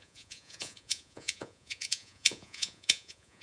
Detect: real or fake fake